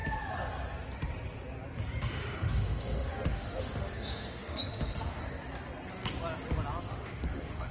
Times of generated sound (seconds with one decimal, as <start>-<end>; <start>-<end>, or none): 2.0-5.2; 6.8-7.7